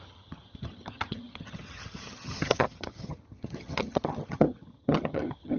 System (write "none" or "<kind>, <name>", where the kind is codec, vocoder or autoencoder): vocoder, HiFi-GAN